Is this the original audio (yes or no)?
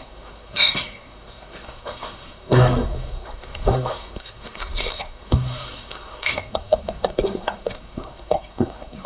no